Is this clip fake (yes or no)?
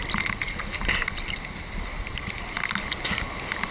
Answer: no